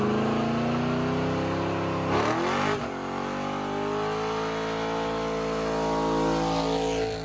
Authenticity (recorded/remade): recorded